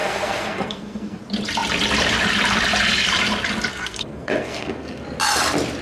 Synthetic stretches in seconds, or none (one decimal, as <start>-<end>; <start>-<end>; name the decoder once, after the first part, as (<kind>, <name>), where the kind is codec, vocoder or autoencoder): 0.0-1.2 (codec, SNAC); 3.7-5.0